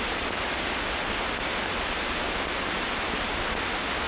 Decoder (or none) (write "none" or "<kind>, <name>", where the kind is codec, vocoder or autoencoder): none